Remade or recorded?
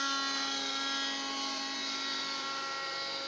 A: recorded